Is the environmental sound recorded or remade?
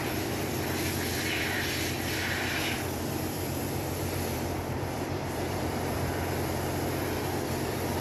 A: remade